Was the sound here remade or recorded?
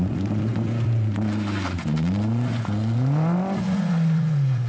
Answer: remade